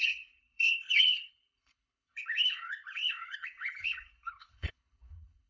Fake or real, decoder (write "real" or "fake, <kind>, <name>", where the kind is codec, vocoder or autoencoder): fake, codec, HILCodec